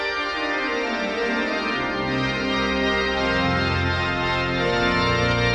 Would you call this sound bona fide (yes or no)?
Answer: yes